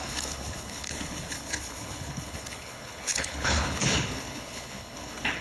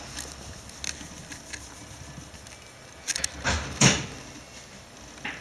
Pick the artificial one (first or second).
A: first